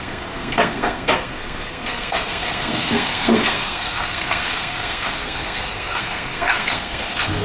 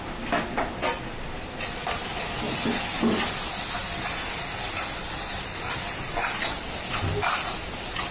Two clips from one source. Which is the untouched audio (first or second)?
second